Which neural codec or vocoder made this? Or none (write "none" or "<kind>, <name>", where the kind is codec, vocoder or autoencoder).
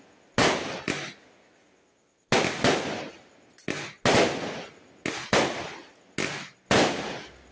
none